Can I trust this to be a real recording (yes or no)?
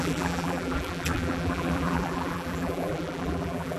no